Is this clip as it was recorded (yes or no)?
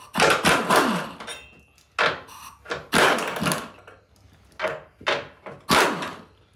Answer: yes